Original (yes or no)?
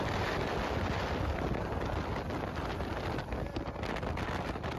yes